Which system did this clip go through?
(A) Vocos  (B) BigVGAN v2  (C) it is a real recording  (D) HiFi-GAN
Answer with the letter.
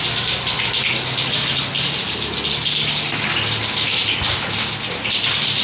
C